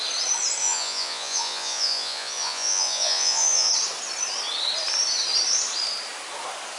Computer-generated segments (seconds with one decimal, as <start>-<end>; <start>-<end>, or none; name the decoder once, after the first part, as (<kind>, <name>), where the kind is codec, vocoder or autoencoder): 0.6-3.7 (vocoder, Vocos)